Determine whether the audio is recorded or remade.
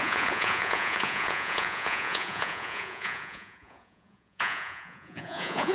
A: remade